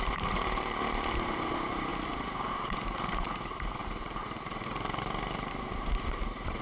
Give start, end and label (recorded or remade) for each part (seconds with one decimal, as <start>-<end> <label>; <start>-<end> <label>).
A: 0.0-6.6 remade